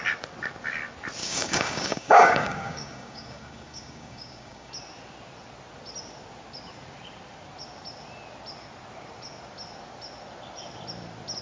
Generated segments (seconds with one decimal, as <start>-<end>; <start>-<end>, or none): 1.2-4.7